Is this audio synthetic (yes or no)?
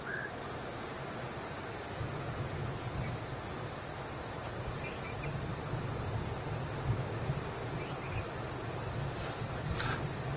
no